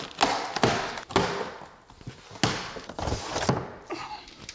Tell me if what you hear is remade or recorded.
recorded